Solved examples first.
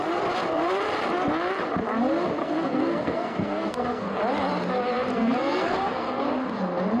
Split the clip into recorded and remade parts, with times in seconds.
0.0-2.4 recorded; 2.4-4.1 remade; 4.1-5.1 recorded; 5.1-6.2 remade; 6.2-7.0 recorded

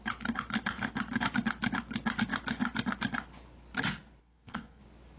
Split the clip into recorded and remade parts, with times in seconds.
0.0-4.2 recorded; 4.2-4.8 remade; 4.8-5.2 recorded

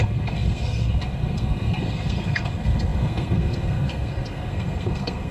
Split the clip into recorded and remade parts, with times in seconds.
0.0-5.3 remade

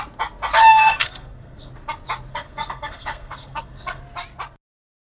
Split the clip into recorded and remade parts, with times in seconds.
0.0-0.6 recorded; 0.6-1.7 remade; 1.7-2.3 recorded; 2.3-4.0 remade; 4.0-5.2 recorded

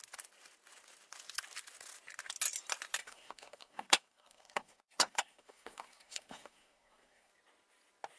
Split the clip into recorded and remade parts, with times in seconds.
0.0-3.0 recorded; 3.0-7.3 remade; 7.3-8.2 recorded